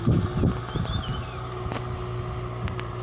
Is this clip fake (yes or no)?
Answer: no